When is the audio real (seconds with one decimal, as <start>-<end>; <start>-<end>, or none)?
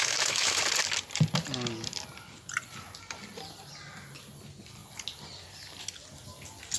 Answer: 0.6-6.8